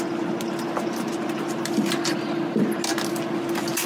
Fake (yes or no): no